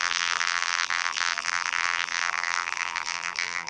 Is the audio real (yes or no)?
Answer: no